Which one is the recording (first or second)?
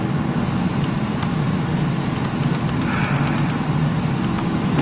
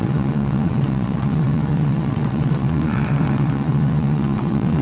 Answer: first